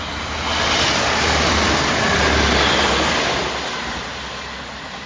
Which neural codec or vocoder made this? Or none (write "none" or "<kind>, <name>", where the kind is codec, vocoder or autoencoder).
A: none